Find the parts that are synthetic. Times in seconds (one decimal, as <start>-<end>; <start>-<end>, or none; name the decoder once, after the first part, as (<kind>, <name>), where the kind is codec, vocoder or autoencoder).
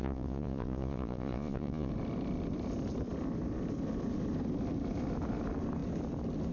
0.0-1.9 (vocoder, Vocos)